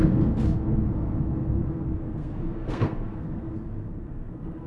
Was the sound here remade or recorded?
remade